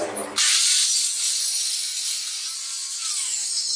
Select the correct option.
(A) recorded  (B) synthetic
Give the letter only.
A